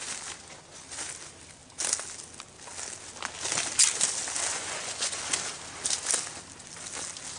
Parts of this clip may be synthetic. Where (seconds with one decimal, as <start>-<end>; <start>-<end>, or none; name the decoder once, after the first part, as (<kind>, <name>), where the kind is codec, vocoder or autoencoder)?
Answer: 4.5-5.2 (vocoder, Vocos)